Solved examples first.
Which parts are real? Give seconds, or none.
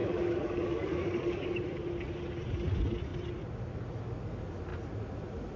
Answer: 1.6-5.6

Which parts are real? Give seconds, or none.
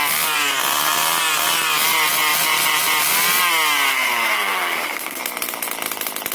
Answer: 0.0-3.9; 5.2-6.3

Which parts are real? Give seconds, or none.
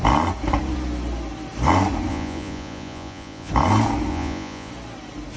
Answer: 0.0-2.1; 3.5-4.1; 4.7-5.4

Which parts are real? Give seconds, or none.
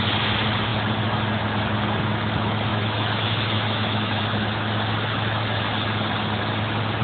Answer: 0.0-2.7; 4.2-7.0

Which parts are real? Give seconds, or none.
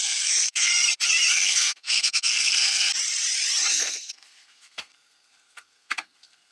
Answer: 0.7-1.3; 2.9-3.7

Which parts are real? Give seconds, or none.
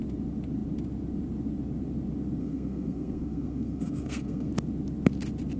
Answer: 0.0-2.4; 4.5-5.6